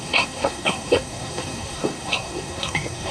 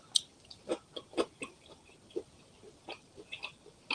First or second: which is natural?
second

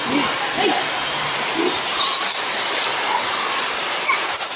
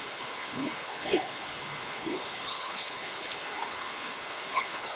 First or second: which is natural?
first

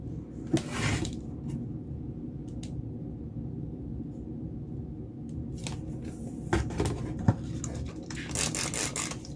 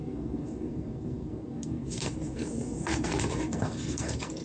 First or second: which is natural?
first